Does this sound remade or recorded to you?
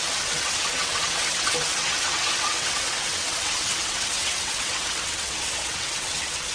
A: remade